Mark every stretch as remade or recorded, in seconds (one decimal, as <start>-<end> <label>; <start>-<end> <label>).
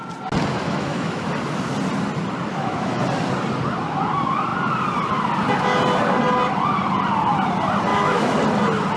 0.0-0.5 recorded; 0.5-1.3 remade; 1.3-2.5 recorded; 2.5-3.0 remade; 3.0-7.9 recorded; 7.9-8.4 remade; 8.4-9.0 recorded